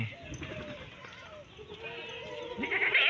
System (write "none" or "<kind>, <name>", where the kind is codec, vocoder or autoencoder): none